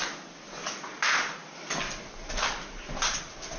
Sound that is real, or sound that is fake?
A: real